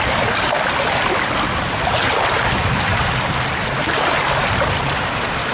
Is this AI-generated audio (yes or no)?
no